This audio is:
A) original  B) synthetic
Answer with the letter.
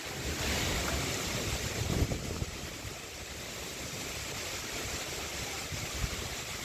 A